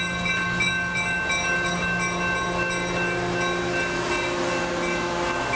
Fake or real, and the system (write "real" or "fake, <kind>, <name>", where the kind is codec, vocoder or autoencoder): real